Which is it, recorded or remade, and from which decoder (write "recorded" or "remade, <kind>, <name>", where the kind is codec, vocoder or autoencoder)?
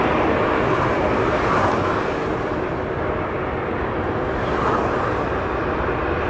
recorded